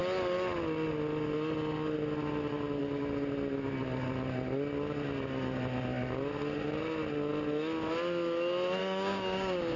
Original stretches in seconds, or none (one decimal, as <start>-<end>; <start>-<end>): 0.0-8.8